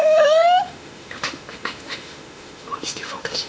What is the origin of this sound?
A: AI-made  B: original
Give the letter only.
A